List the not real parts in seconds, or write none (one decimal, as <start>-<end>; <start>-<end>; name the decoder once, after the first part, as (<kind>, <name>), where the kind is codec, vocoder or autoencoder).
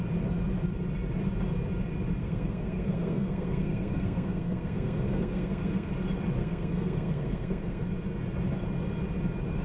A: 2.2-5.9 (codec, SNAC); 6.4-7.8